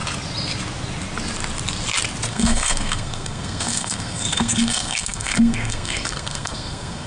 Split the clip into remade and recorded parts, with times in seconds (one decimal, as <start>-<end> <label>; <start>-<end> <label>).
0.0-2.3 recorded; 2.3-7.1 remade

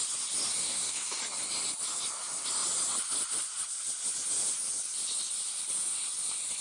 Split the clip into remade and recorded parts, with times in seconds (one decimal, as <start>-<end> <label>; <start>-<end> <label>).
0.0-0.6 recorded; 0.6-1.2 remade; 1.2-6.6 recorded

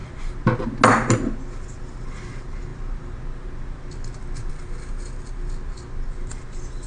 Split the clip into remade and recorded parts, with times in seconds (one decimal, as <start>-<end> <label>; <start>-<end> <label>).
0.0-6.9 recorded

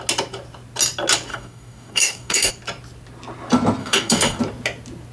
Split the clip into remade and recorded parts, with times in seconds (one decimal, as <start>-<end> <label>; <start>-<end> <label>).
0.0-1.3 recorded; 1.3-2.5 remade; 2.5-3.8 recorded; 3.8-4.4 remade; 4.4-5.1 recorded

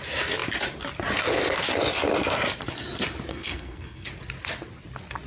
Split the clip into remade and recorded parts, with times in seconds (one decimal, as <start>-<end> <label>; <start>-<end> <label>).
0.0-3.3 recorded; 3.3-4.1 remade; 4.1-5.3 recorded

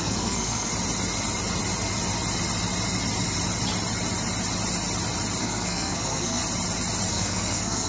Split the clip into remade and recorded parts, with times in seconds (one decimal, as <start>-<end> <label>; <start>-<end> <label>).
0.0-0.7 remade; 0.7-5.4 recorded; 5.4-6.4 remade; 6.4-7.1 recorded; 7.1-7.9 remade